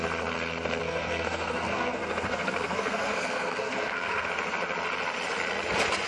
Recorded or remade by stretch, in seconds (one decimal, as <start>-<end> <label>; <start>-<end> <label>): 0.0-0.8 recorded; 0.8-4.3 remade; 4.3-6.1 recorded